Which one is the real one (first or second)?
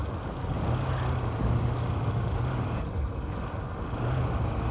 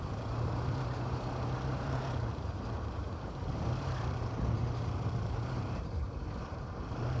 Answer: first